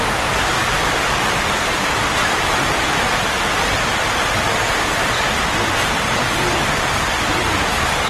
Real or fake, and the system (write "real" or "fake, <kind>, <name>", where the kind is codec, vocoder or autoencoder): fake, vocoder, BigVGAN v2